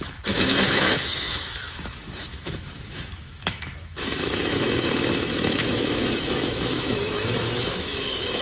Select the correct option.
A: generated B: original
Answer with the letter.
A